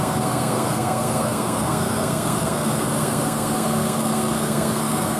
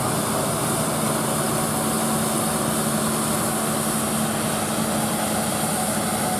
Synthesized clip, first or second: first